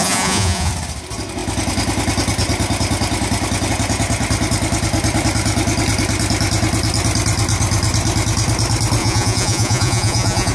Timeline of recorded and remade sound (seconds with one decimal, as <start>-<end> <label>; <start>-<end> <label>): 0.0-0.7 remade; 0.7-9.0 recorded; 9.0-10.5 remade